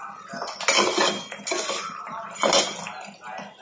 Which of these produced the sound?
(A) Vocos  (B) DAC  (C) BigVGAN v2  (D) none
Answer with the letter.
D